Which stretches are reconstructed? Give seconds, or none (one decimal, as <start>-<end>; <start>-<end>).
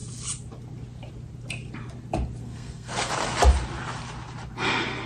2.4-3.1